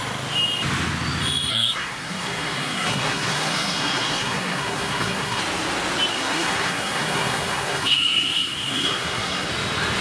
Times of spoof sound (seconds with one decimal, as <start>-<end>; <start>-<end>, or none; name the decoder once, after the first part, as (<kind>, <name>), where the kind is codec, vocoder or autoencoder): 1.5-5.4 (codec, SNAC); 6.1-9.5

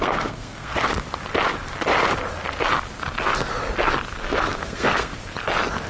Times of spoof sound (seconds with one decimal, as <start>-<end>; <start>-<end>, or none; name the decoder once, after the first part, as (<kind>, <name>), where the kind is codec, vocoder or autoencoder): 0.0-0.7 (codec, SNAC); 4.2-5.1

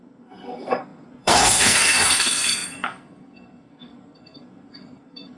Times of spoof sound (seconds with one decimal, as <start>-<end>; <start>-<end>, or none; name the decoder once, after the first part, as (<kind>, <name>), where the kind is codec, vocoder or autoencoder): 0.0-5.4 (codec, SNAC)

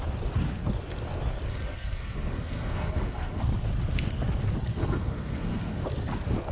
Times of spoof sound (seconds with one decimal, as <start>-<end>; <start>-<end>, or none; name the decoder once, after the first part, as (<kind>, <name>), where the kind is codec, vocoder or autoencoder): 1.5-3.4 (codec, SNAC); 4.7-5.8

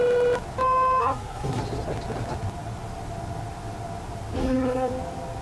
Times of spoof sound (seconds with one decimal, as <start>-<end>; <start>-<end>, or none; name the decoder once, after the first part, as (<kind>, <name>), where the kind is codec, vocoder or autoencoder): 1.0-1.6 (codec, SNAC); 4.4-4.9

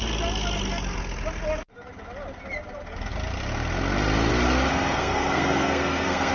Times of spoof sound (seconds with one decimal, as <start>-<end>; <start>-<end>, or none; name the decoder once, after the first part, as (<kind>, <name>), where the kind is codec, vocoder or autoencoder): 4.7-6.3 (codec, SNAC)